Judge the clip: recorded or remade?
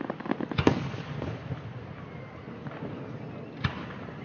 recorded